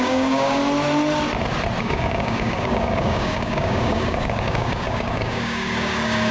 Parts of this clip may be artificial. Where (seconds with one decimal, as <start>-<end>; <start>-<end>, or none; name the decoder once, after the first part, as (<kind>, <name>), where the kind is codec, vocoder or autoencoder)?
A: 0.0-0.6 (codec, DAC); 1.8-6.3